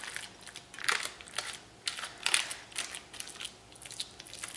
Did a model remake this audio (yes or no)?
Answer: no